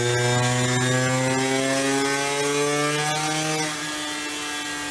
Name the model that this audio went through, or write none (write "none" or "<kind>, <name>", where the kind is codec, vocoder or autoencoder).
none